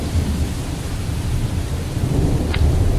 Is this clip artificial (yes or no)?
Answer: no